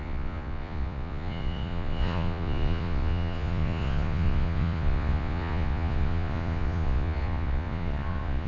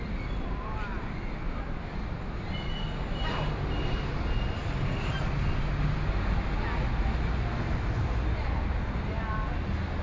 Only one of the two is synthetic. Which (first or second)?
first